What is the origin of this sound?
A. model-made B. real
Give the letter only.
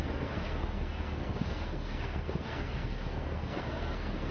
A